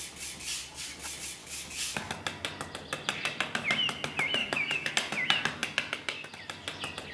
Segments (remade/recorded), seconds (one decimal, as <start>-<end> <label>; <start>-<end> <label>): 0.0-1.4 recorded; 1.4-2.1 remade; 2.1-4.4 recorded; 4.4-4.9 remade; 4.9-7.1 recorded